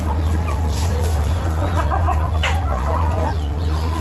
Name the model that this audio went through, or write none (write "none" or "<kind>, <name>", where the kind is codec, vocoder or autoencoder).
vocoder, Vocos